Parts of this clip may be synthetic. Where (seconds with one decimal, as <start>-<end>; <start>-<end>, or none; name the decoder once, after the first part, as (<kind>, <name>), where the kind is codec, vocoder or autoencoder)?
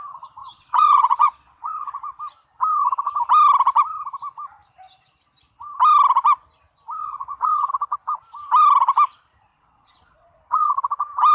0.4-2.2 (vocoder, Vocos); 7.0-7.7; 9.5-10.7